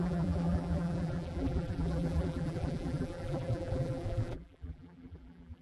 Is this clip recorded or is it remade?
remade